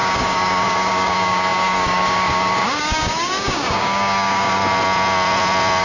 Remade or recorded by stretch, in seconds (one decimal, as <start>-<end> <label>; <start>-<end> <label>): 0.0-4.6 remade; 4.6-5.8 recorded